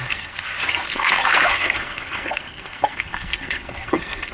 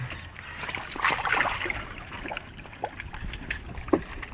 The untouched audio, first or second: second